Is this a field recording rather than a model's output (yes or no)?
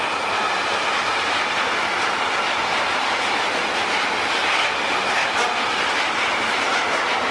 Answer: yes